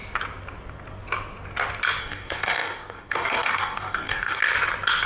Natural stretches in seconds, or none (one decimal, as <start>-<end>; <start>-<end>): 0.0-2.0; 4.4-5.1